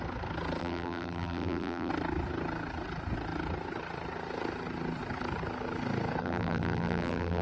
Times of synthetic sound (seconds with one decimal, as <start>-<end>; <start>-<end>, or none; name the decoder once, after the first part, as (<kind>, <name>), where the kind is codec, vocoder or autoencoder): 0.6-1.9 (vocoder, BigVGAN v2); 6.2-7.4